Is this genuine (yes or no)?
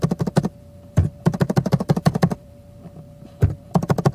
no